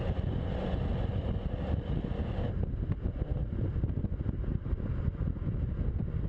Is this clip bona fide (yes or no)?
yes